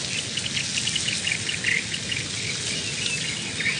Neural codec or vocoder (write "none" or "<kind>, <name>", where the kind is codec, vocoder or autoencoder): none